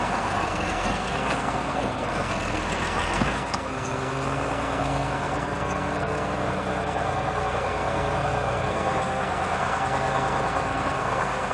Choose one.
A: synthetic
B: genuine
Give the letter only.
A